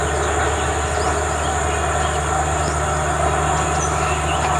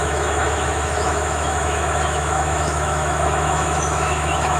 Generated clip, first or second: second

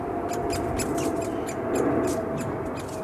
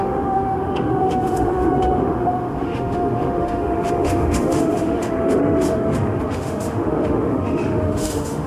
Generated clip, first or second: second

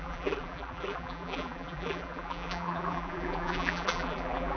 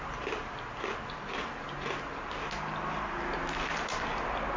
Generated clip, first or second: first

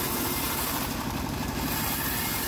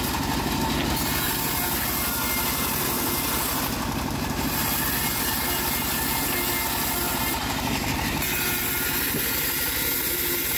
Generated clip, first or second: first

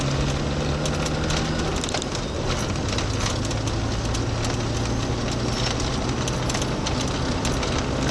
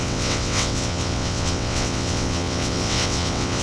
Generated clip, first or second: second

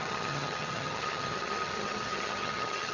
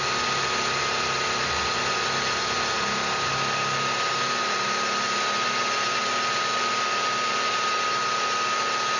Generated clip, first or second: first